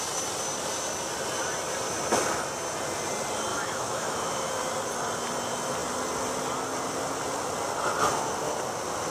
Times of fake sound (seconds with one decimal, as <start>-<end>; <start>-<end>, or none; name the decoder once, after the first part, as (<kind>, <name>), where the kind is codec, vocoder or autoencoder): 3.5-4.5 (autoencoder, DAC-VAE)

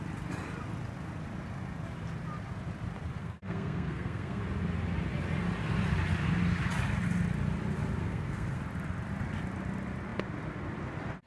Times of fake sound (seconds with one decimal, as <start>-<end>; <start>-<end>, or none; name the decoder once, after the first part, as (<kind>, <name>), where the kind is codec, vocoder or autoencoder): 3.2-4.4 (codec, SNAC); 8.0-8.6